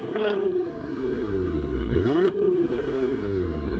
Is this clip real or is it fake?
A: fake